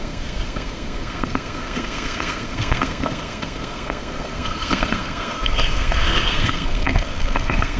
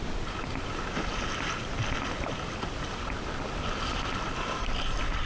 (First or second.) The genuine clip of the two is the second